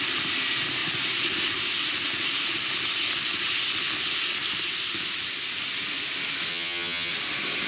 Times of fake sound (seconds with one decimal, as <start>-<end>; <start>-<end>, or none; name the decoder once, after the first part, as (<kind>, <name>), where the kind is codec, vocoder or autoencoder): 6.5-7.1 (vocoder, HiFi-GAN)